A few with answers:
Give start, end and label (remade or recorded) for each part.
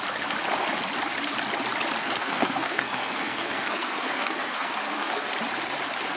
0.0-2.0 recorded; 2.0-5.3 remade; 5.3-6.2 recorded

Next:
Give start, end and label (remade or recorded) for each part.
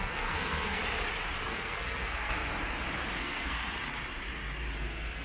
0.0-0.8 remade; 0.8-1.5 recorded; 1.5-2.5 remade; 2.5-3.2 recorded; 3.2-3.6 remade; 3.6-4.8 recorded; 4.8-5.2 remade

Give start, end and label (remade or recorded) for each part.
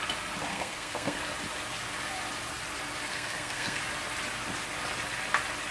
0.0-0.5 recorded; 0.5-1.2 remade; 1.2-3.1 recorded; 3.1-3.8 remade; 3.8-5.7 recorded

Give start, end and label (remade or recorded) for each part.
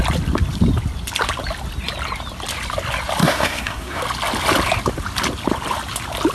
0.0-3.2 recorded; 3.2-4.0 remade; 4.0-6.3 recorded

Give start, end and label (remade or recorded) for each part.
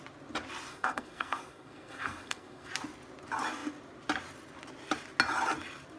0.0-0.7 recorded; 0.7-2.7 remade; 2.7-6.0 recorded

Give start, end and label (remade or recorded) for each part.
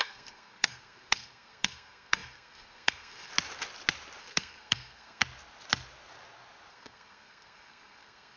0.0-3.3 remade; 3.3-4.2 recorded; 4.2-5.2 remade; 5.2-6.7 recorded; 6.7-8.4 remade